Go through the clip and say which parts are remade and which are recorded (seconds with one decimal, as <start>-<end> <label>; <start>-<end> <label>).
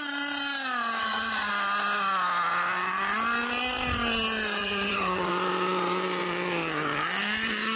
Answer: 0.0-1.0 recorded; 1.0-1.5 remade; 1.5-4.6 recorded; 4.6-5.3 remade; 5.3-7.8 recorded